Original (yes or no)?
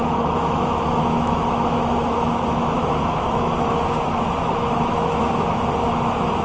no